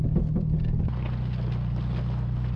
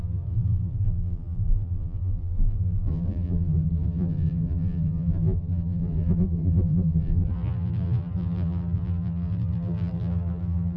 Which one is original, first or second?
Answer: first